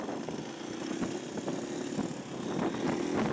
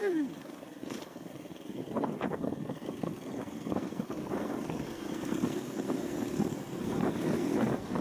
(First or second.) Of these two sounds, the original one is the first